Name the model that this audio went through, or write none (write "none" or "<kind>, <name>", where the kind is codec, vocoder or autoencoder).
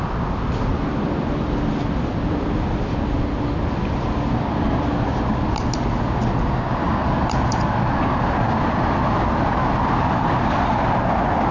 none